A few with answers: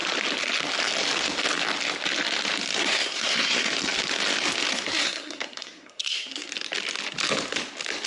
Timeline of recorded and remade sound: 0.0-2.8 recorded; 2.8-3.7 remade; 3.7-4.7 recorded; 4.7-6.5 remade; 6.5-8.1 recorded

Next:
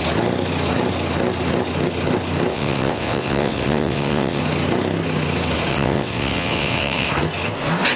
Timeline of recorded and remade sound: 0.0-2.5 recorded; 2.5-4.4 remade; 4.4-5.7 recorded; 5.7-7.1 remade; 7.1-8.0 recorded

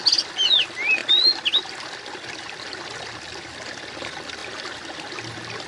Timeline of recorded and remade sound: 0.0-5.7 recorded

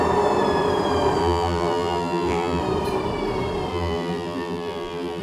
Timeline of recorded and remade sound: 0.0-1.2 recorded; 1.2-2.6 remade; 2.6-3.7 recorded; 3.7-5.2 remade

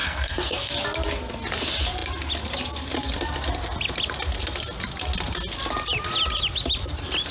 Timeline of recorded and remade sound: 0.0-0.7 remade; 0.7-7.3 recorded

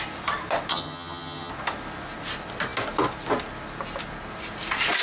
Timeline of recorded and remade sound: 0.0-0.7 recorded; 0.7-1.5 remade; 1.5-5.0 recorded